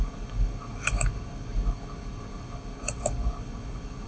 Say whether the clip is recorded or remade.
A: remade